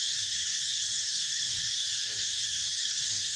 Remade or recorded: remade